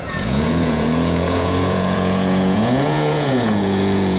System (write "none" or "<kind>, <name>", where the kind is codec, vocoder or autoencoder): vocoder, Vocos